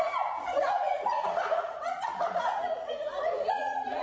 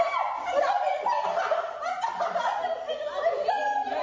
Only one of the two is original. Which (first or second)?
second